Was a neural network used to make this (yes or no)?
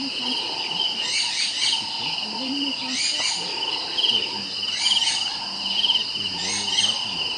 no